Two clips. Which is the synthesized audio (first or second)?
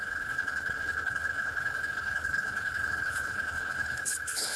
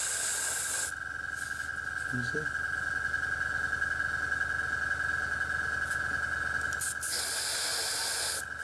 first